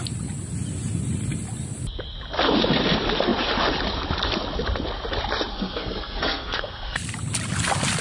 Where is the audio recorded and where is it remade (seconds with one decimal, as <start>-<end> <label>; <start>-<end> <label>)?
0.0-5.5 recorded; 5.5-7.0 remade; 7.0-8.0 recorded